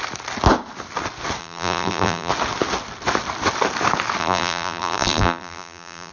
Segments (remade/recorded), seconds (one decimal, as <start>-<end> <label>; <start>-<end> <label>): 0.0-1.4 recorded; 1.4-2.3 remade; 2.3-4.2 recorded; 4.2-6.1 remade